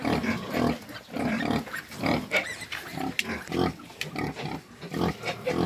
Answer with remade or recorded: recorded